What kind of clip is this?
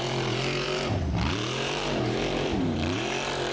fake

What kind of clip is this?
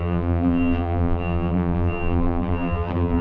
fake